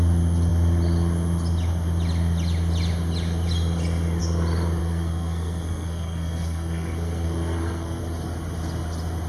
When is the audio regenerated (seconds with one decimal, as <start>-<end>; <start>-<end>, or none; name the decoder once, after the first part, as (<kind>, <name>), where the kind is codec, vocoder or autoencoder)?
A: 4.8-8.0 (codec, SNAC)